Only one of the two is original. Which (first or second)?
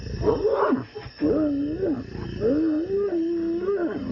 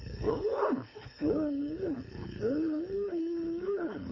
first